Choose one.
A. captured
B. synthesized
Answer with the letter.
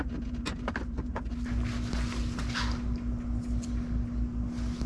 A